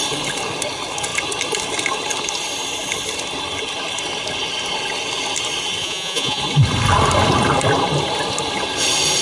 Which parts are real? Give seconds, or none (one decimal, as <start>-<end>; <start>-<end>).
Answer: 0.0-5.8; 6.4-9.2

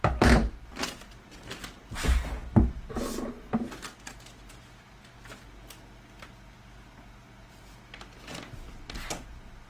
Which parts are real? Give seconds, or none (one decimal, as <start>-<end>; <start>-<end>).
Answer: 0.0-9.7

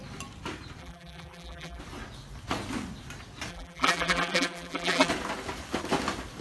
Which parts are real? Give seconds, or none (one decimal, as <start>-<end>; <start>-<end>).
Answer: 0.0-0.8; 1.8-3.5; 5.1-6.4

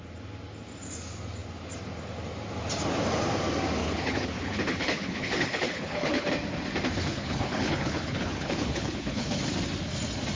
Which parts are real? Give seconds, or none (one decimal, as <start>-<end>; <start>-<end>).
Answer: 0.0-3.8; 6.3-7.1; 9.4-10.4

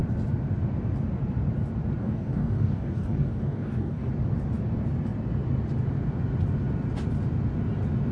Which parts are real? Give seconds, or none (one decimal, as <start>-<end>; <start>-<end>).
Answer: 0.0-2.0; 4.1-8.1

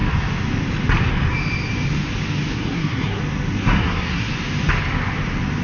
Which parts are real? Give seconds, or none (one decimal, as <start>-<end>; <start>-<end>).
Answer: 0.0-2.5; 3.2-3.6; 4.3-5.6

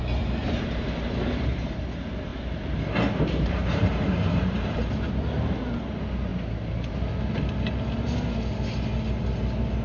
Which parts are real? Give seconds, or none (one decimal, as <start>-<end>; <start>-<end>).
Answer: 0.0-0.4; 1.8-2.3; 5.1-9.8